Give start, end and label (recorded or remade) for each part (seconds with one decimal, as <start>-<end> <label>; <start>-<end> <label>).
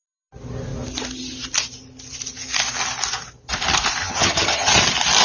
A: 0.0-4.0 recorded; 4.0-4.7 remade; 4.7-5.2 recorded